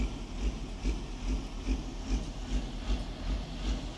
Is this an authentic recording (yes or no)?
yes